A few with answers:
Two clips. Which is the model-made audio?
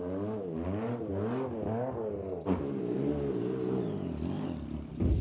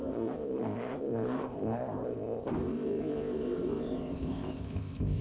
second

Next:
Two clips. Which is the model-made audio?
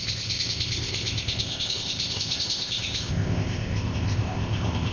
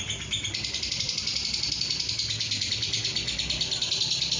first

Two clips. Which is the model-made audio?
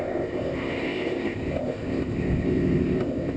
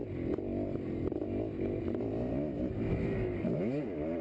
first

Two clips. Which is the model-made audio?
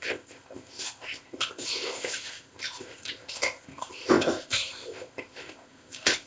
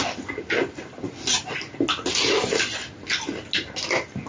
first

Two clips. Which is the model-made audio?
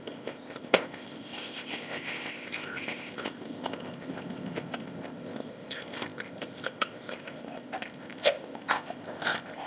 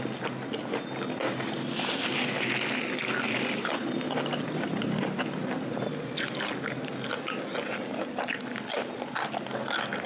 first